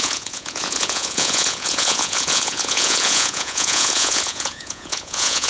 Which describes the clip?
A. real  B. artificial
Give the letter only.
B